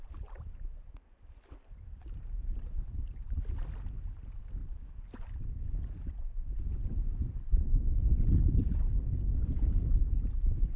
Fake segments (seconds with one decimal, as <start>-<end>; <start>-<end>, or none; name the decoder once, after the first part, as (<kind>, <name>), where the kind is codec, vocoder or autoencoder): none